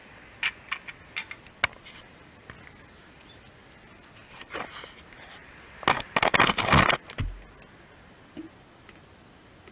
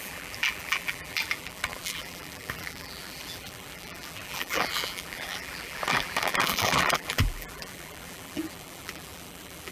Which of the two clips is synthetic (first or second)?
second